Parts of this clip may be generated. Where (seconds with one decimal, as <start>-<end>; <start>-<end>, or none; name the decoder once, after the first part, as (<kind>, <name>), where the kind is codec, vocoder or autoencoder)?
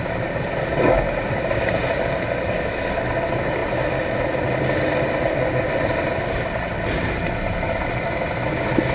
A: none